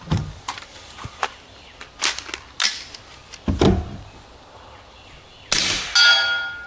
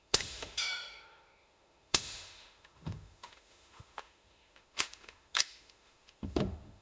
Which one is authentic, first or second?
first